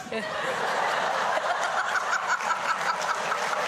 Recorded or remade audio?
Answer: remade